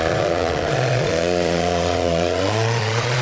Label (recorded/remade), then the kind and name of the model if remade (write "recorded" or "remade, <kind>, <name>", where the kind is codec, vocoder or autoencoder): remade, vocoder, Vocos